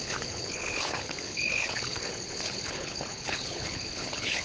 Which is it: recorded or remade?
remade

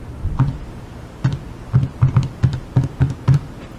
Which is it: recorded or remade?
recorded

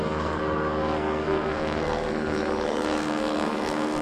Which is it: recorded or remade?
remade